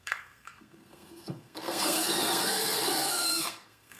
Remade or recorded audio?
remade